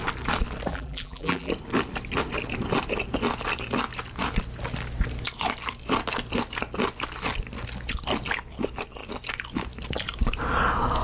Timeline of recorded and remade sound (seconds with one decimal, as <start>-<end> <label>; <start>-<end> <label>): 0.0-0.7 recorded; 0.7-1.5 remade; 1.5-11.0 recorded